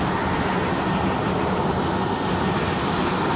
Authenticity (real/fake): real